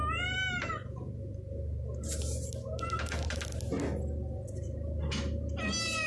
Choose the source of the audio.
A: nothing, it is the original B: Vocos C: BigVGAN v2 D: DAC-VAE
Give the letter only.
A